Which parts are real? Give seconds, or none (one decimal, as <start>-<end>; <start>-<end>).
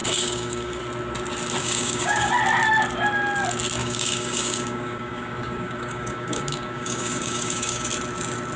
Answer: 0.8-1.6; 2.3-3.8; 7.9-8.6